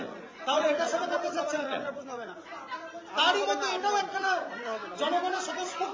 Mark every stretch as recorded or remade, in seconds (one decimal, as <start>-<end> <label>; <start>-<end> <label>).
0.0-2.5 remade; 2.5-4.0 recorded; 4.0-4.8 remade; 4.8-5.5 recorded; 5.5-5.9 remade